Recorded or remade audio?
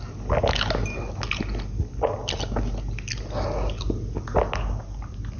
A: recorded